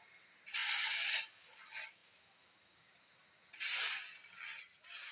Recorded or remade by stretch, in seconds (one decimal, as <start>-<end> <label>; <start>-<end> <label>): 0.0-5.1 recorded